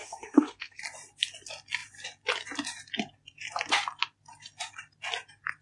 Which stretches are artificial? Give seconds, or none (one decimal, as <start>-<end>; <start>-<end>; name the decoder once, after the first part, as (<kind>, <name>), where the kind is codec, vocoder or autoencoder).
0.0-0.8 (codec, SNAC)